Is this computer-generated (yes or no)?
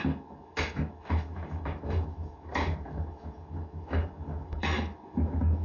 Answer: yes